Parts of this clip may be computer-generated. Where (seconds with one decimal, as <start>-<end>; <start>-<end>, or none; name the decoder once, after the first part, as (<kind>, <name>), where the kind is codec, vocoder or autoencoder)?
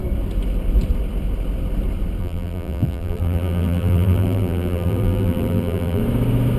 2.2-6.0 (vocoder, BigVGAN v2)